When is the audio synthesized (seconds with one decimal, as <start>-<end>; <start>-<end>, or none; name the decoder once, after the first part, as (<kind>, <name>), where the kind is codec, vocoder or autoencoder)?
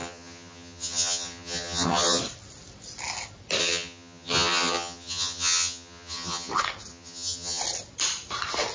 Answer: 0.0-2.2 (vocoder, HiFi-GAN); 3.6-6.5; 6.9-7.6